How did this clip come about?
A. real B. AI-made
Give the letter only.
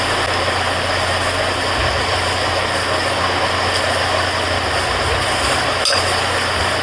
A